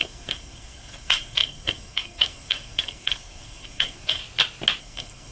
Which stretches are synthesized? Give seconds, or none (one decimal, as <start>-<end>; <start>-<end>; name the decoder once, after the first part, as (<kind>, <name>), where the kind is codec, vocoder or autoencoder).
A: 0.0-4.2 (codec, SNAC); 4.8-5.3